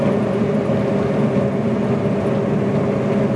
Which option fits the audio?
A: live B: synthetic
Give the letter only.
A